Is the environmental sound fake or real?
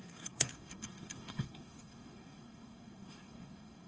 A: fake